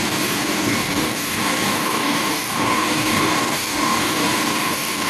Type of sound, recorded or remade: remade